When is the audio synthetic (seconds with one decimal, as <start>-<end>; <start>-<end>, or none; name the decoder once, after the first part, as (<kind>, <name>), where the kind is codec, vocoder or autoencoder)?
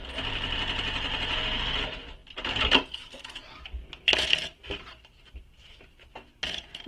none